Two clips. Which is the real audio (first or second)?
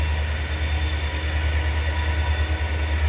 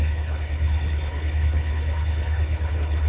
first